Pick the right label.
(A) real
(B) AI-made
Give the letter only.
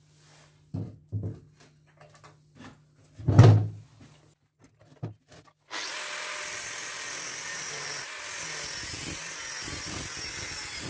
A